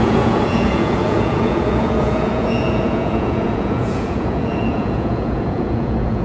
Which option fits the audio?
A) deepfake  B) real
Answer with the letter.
A